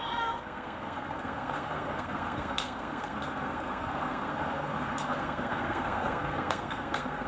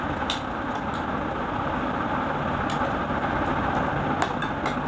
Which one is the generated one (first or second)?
first